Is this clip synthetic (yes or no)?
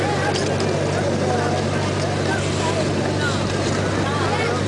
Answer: no